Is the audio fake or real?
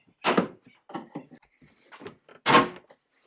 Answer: real